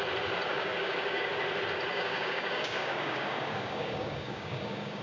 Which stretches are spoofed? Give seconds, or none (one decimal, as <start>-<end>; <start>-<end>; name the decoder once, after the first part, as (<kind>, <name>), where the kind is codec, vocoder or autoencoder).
0.5-1.3 (codec, DAC); 1.9-5.0